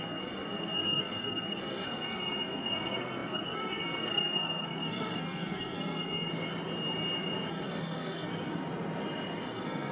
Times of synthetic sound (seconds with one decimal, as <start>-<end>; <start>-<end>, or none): 0.0-6.3; 7.5-8.3; 9.4-9.9